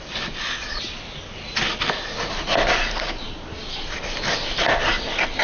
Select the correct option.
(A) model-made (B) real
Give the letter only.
B